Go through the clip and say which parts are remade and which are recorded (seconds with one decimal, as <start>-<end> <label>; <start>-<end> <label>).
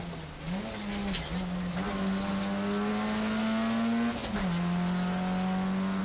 0.0-6.0 recorded